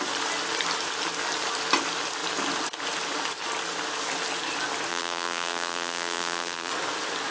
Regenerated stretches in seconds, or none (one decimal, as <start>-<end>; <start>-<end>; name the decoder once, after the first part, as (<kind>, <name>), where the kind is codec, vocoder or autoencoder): 4.9-6.7 (vocoder, BigVGAN v2)